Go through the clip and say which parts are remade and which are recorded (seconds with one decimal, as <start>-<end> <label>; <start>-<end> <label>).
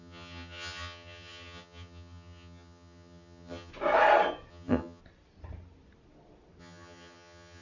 0.0-3.7 remade; 3.7-4.5 recorded; 4.5-5.0 remade; 5.0-6.6 recorded; 6.6-7.6 remade